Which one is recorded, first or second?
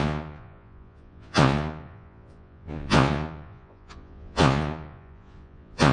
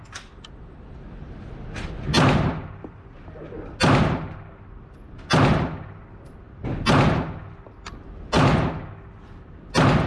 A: second